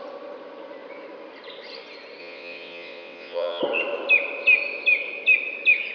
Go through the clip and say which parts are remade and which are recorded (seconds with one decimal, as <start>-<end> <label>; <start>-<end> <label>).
0.0-2.2 recorded; 2.2-3.6 remade; 3.6-5.9 recorded